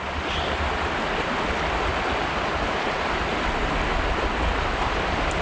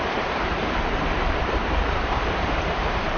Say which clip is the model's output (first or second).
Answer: second